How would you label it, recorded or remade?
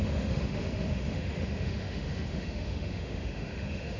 remade